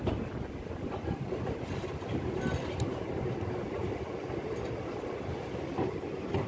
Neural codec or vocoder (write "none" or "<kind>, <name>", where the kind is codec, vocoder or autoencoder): none